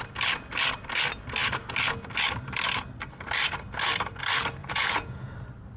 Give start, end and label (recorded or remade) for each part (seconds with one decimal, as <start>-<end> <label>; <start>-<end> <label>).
0.0-4.6 recorded; 4.6-5.3 remade; 5.3-5.8 recorded